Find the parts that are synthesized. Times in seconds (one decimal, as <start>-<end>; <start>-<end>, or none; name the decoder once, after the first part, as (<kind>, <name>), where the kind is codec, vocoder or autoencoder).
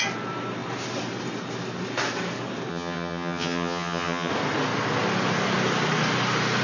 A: 2.7-4.3 (vocoder, HiFi-GAN)